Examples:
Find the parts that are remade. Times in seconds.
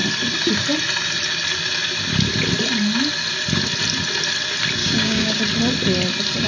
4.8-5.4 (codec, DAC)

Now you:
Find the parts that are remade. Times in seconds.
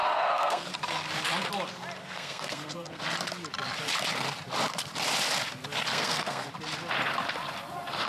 0.0-0.7 (codec, SNAC); 2.0-3.0; 5.9-6.5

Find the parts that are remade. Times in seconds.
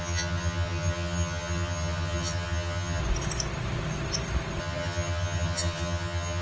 0.0-3.0 (vocoder, HiFi-GAN); 4.6-6.4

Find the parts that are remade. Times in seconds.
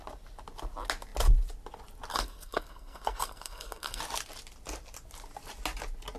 2.1-4.0 (codec, SNAC)